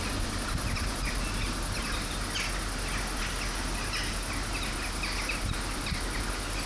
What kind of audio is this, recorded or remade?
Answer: recorded